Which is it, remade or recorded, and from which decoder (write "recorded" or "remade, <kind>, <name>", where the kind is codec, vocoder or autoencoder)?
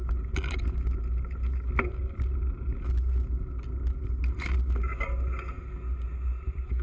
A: recorded